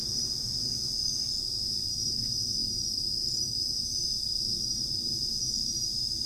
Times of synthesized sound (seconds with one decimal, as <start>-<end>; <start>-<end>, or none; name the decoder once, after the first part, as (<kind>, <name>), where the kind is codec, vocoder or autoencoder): none

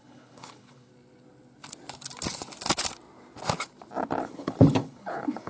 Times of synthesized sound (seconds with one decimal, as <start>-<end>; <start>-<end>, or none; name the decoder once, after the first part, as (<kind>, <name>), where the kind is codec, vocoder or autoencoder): 0.0-0.9 (codec, HILCodec); 4.2-5.5

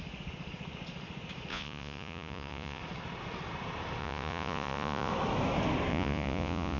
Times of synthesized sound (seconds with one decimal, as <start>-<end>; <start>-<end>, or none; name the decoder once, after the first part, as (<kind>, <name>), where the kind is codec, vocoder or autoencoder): 1.5-2.8 (vocoder, Vocos); 4.0-5.1; 5.9-6.8